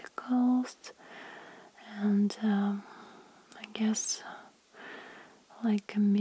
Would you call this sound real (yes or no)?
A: yes